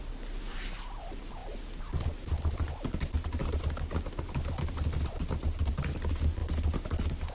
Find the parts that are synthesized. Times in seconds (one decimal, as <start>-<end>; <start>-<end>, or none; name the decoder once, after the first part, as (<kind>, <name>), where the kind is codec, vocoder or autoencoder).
none